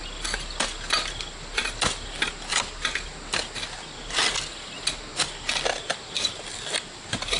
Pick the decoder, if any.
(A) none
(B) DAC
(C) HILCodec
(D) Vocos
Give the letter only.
A